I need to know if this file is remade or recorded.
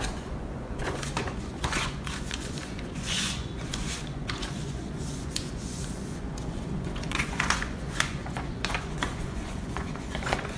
remade